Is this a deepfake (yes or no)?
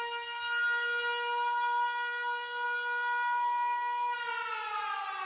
no